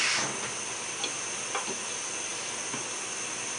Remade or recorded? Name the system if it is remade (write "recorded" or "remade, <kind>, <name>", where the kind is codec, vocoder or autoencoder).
recorded